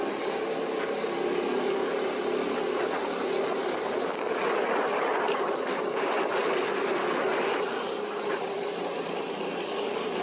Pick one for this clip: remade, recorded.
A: recorded